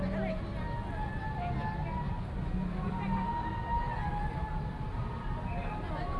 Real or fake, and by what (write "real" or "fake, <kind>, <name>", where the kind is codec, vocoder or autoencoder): real